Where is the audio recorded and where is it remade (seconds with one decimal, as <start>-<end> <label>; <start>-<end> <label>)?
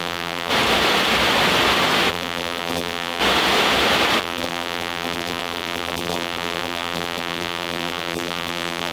0.0-0.5 remade; 0.5-2.1 recorded; 2.1-3.2 remade; 3.2-4.2 recorded; 4.2-8.9 remade